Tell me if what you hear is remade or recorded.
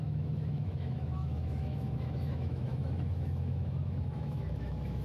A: remade